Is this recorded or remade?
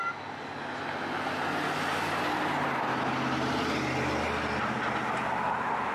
recorded